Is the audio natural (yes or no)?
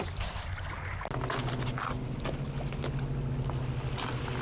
yes